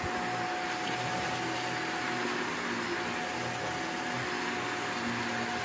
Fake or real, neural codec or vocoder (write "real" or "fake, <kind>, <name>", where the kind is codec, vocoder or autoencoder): real